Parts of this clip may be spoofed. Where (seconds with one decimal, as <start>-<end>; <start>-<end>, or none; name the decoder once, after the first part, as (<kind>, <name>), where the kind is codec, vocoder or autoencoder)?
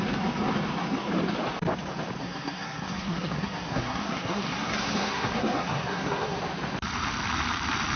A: 2.2-6.4 (codec, SNAC)